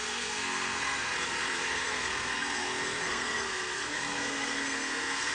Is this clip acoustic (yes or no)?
no